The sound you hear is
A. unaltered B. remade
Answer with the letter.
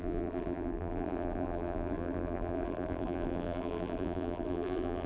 B